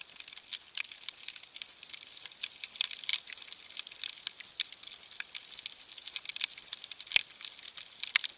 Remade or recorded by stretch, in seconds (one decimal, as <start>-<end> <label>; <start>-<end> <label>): 0.0-8.4 recorded

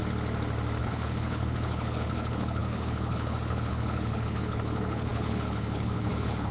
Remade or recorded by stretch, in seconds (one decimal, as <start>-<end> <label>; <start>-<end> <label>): 0.0-0.8 recorded; 0.8-6.5 remade

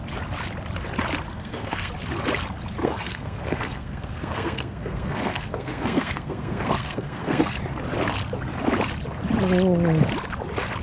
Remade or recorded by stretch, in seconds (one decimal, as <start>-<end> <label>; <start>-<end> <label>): 0.0-1.3 recorded; 1.3-1.9 remade; 1.9-2.8 recorded; 2.8-7.6 remade; 7.6-10.8 recorded

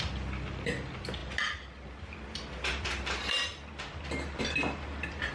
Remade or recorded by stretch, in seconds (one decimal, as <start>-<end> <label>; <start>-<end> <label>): 0.0-5.3 recorded

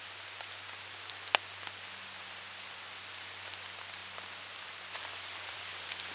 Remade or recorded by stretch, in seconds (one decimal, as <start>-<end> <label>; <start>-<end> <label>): 0.0-4.0 recorded; 4.0-5.6 remade; 5.6-6.1 recorded

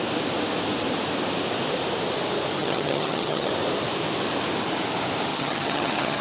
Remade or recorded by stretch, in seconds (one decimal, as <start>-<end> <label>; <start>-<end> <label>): 0.0-2.6 recorded; 2.6-3.5 remade; 3.5-5.3 recorded; 5.3-6.2 remade

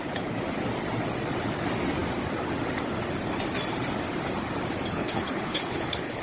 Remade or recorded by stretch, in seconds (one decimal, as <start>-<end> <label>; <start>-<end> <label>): 0.0-4.9 recorded; 4.9-6.2 remade

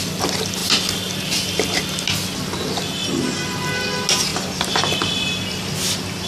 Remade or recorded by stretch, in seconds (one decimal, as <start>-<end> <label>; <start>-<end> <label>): 0.0-6.3 recorded